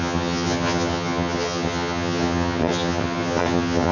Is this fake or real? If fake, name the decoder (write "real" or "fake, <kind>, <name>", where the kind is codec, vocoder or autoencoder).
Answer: fake, vocoder, HiFi-GAN